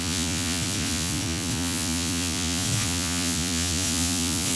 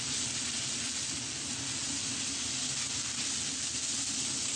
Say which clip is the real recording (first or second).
second